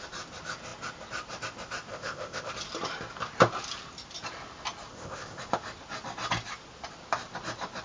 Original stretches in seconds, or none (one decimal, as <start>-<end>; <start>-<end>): 0.0-1.9; 2.5-4.9; 5.4-7.8